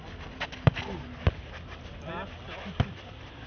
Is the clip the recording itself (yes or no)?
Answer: yes